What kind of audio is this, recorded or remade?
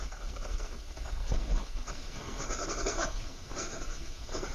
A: remade